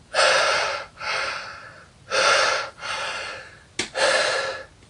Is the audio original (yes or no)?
yes